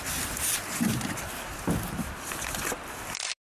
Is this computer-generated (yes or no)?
no